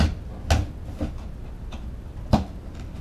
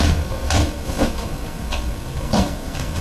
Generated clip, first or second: second